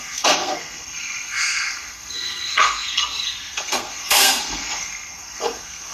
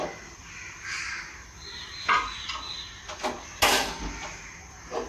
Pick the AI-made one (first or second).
first